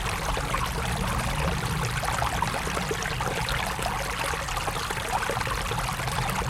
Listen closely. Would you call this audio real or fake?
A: real